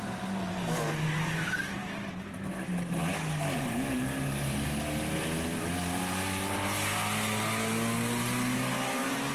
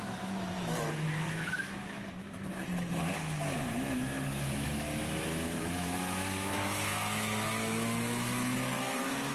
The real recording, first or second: first